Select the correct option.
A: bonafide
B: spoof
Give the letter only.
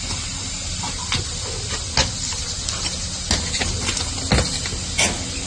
A